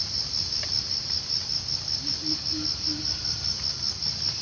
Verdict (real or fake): real